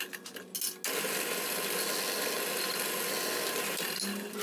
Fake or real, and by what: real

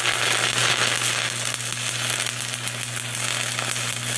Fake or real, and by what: real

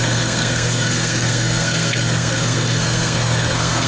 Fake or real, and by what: fake, codec, SNAC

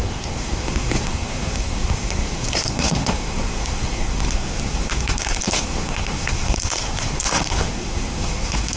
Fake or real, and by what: fake, codec, SNAC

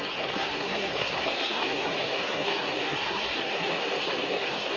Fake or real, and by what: fake, codec, SNAC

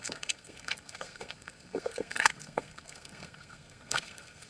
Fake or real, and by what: fake, codec, SNAC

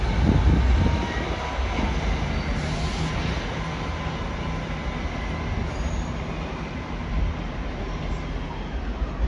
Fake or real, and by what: real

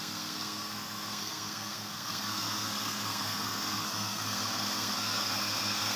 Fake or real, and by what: fake, codec, SNAC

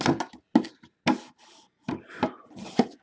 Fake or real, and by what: real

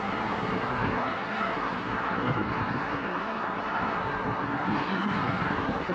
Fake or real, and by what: fake, codec, SNAC